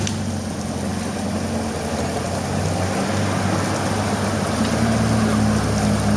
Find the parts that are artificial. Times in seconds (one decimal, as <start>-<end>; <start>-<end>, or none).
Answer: none

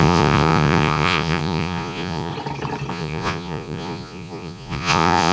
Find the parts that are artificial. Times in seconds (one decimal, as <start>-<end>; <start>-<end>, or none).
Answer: 0.0-2.3; 2.9-5.3

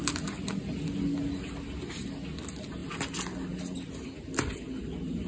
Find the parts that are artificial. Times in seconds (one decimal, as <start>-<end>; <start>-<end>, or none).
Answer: none

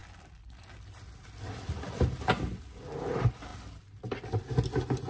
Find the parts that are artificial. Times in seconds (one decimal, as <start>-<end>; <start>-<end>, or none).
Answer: none